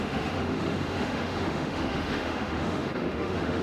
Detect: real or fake fake